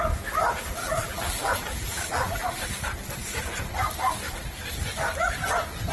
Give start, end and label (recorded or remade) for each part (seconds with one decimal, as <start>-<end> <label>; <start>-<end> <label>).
0.0-0.8 recorded; 0.8-2.6 remade; 2.6-5.9 recorded